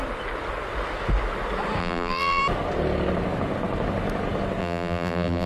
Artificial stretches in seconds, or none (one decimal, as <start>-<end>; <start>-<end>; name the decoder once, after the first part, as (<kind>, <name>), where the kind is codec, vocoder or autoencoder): 1.8-2.4 (vocoder, BigVGAN v2); 4.6-5.5